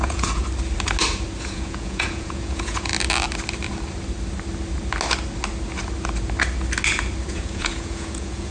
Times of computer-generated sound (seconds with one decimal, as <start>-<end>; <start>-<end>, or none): 0.0-0.4; 1.4-2.9; 7.3-8.5